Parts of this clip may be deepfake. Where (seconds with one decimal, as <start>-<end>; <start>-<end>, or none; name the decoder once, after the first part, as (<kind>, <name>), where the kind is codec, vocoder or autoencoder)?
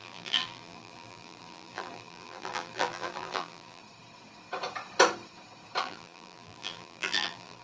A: 0.0-3.8 (vocoder, BigVGAN v2); 5.8-7.6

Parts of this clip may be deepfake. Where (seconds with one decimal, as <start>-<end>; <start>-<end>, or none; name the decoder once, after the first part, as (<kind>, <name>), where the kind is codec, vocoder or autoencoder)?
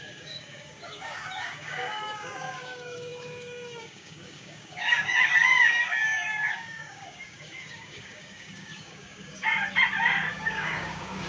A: 0.0-9.5 (codec, DAC); 10.3-11.3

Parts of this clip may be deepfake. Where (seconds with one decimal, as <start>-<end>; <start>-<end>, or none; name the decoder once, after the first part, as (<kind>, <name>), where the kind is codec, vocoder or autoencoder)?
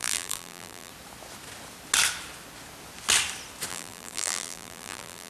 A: 0.0-0.9 (vocoder, BigVGAN v2); 3.7-5.3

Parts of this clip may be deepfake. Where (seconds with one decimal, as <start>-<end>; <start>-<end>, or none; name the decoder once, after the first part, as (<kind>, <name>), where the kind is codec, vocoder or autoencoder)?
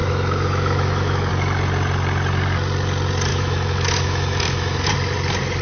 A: 0.0-1.3 (autoencoder, DAC-VAE); 3.3-4.9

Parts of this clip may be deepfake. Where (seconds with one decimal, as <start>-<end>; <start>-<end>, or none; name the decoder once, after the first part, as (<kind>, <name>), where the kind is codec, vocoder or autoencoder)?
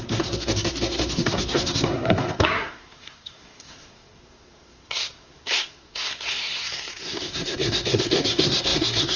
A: 0.0-9.2 (codec, SNAC)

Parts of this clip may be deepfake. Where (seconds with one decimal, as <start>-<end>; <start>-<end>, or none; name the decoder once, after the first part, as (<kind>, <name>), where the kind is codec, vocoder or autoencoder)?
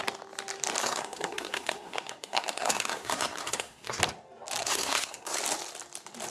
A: 0.8-4.0 (codec, SNAC); 4.6-5.4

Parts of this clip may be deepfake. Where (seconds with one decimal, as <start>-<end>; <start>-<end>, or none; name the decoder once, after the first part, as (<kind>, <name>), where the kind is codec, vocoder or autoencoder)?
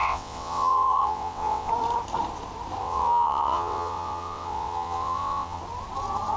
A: 0.0-1.7 (vocoder, WaveNeXt); 2.8-5.6